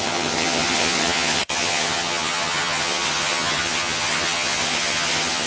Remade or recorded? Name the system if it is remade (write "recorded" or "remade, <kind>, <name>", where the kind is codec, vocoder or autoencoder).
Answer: remade, vocoder, HiFi-GAN